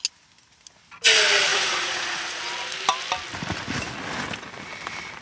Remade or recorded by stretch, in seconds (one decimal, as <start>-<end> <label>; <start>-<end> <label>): 0.0-1.5 recorded; 1.5-2.4 remade; 2.4-5.2 recorded